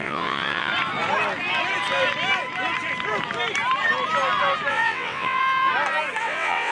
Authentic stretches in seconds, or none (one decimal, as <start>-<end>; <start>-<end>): 0.7-4.7; 5.4-6.2